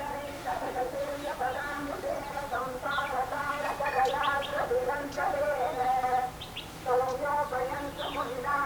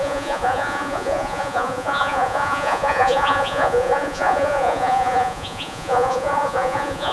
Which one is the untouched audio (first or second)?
first